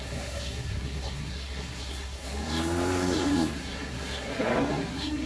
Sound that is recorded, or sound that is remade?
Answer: remade